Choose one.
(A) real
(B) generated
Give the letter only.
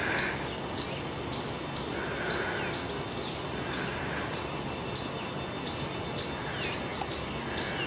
A